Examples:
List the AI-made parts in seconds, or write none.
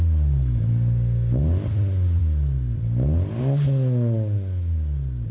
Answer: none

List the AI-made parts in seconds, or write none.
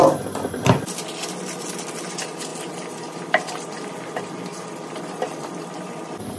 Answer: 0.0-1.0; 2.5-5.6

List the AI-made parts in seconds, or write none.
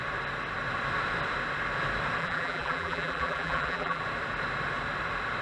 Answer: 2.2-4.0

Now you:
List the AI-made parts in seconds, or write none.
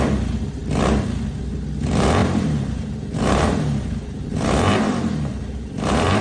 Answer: 2.2-6.2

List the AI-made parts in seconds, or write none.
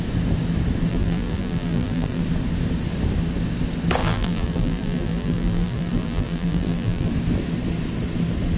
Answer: 0.9-2.2; 4.0-7.1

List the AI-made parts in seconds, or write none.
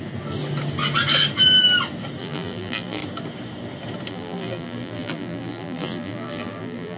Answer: 2.2-3.0; 4.1-7.0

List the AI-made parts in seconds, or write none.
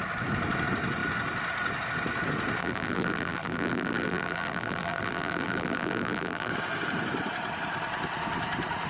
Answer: 2.6-6.5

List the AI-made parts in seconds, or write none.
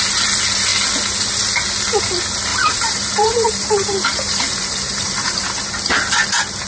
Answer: 2.5-5.7